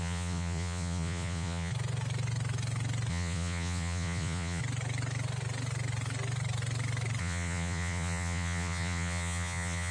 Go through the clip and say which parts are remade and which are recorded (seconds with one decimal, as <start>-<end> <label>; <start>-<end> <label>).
0.0-1.7 remade; 1.7-3.1 recorded; 3.1-4.6 remade; 4.6-7.2 recorded; 7.2-9.9 remade